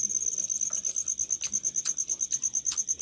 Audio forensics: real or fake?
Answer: real